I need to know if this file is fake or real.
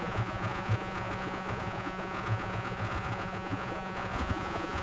fake